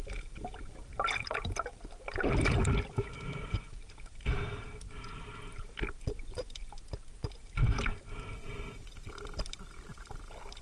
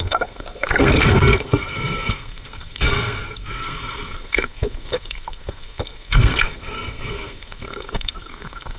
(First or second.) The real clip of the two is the first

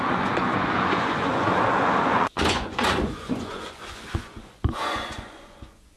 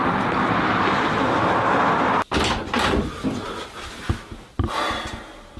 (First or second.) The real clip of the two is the second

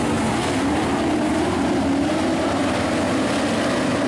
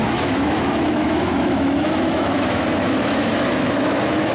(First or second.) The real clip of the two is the first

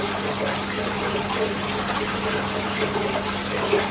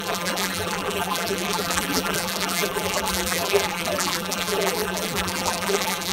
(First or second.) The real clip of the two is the first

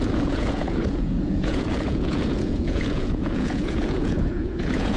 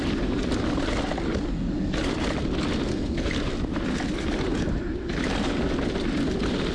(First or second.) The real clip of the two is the second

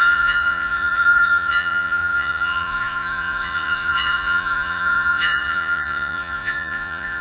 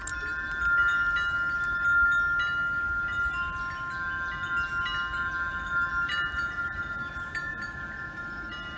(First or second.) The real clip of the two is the second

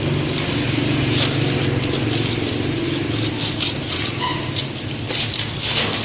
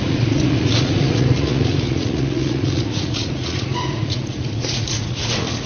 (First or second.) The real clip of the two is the first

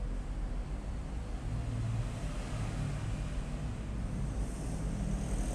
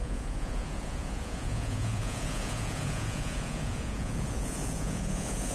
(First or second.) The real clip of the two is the first